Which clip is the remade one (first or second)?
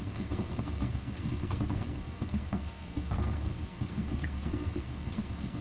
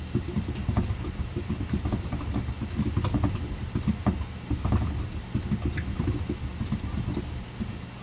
first